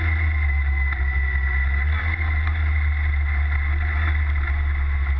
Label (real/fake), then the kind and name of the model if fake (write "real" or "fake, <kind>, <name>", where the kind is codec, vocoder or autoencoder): real